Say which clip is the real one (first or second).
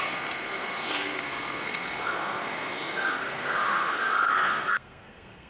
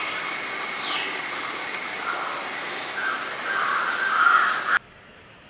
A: second